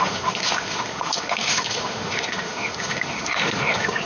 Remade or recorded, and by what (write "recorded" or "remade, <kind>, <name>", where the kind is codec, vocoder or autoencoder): remade, autoencoder, DAC-VAE